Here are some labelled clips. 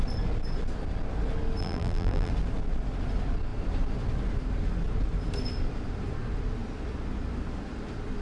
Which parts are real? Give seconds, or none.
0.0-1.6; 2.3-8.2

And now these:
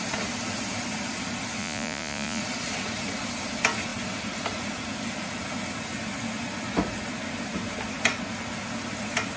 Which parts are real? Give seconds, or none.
0.0-1.6; 2.4-9.4

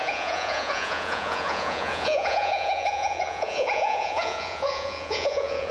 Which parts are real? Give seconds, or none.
none

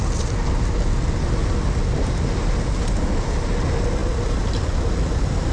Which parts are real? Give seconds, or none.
0.0-4.0; 4.6-5.5

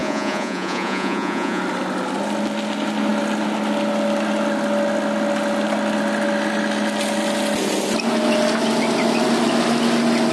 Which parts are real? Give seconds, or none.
1.6-10.3